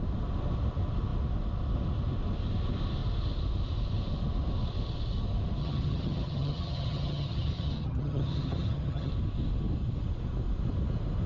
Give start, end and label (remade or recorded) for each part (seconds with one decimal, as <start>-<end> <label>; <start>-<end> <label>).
0.0-5.6 recorded; 5.6-9.1 remade; 9.1-11.3 recorded